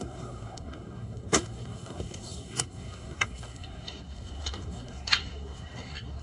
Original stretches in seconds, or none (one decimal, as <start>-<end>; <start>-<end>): none